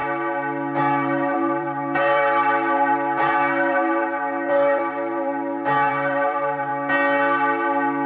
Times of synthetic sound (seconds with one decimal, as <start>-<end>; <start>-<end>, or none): 0.8-6.7

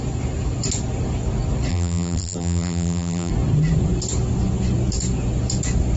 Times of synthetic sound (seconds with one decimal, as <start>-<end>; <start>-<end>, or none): 1.7-3.3

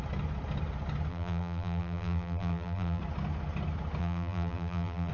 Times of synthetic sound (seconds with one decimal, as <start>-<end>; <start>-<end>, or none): 1.1-3.0; 4.0-5.1

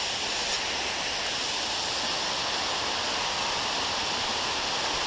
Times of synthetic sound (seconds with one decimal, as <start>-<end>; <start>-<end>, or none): 0.4-1.3; 3.1-3.8

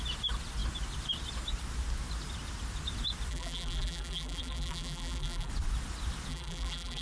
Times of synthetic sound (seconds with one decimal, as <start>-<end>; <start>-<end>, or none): 3.3-5.5; 6.3-7.0